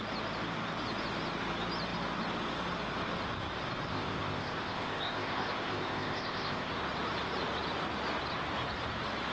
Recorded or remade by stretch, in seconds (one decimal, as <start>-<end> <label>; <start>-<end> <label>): 0.0-3.9 recorded; 3.9-6.7 remade; 6.7-9.3 recorded